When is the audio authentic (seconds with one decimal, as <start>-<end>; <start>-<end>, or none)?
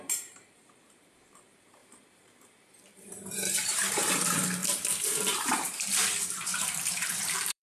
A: none